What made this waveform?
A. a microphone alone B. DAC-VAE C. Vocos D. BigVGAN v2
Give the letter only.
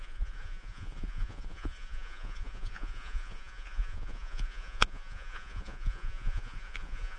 C